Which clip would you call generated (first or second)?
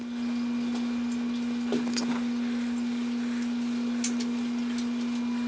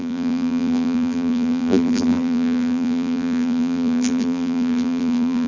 second